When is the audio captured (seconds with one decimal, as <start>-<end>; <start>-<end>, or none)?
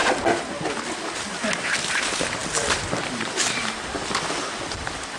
0.0-5.2